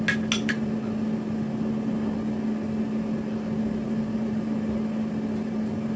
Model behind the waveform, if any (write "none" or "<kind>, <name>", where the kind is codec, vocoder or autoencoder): none